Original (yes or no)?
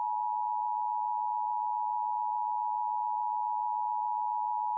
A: yes